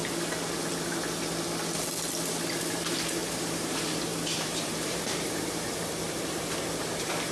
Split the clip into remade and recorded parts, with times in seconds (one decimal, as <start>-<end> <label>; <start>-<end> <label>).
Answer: 0.0-2.6 recorded; 2.6-7.3 remade